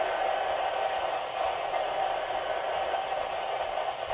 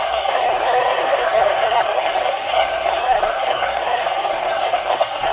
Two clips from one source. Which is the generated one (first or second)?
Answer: second